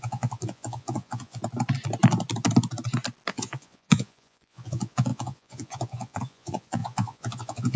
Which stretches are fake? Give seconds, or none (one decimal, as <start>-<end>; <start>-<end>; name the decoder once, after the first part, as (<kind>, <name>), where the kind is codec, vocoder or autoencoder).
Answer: 0.0-1.4 (vocoder, Vocos); 3.3-7.8